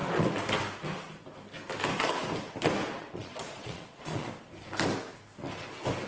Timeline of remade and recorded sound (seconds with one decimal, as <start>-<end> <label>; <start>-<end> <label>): 0.0-3.0 recorded; 3.0-4.3 remade; 4.3-6.1 recorded